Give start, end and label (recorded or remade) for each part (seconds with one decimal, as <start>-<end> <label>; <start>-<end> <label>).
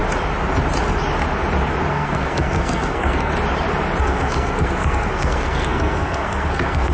0.0-1.9 recorded; 1.9-3.3 remade; 3.3-4.0 recorded; 4.0-6.9 remade